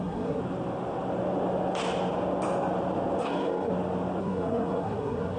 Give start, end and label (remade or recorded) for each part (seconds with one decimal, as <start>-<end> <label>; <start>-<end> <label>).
0.0-0.4 remade; 0.4-3.2 recorded; 3.2-3.7 remade; 3.7-4.2 recorded; 4.2-5.4 remade